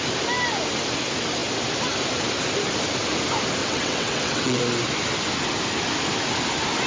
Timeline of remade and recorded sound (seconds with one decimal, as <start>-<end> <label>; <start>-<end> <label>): 0.0-3.6 recorded; 3.6-4.6 remade; 4.6-6.9 recorded